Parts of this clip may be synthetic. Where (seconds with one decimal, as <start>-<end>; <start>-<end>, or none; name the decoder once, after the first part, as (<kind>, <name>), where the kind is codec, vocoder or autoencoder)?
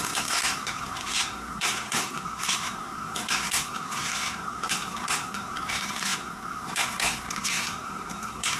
0.0-8.6 (codec, SNAC)